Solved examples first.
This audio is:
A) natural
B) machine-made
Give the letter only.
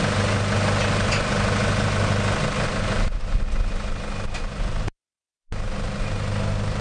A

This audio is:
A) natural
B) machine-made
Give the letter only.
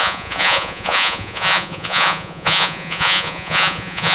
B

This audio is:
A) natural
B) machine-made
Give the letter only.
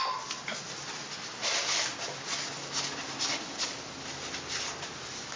A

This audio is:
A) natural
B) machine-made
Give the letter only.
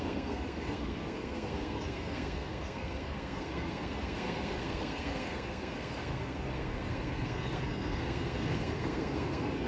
B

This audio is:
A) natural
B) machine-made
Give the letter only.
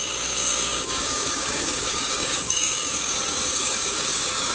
B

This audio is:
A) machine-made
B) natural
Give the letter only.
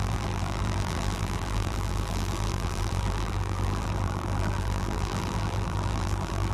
A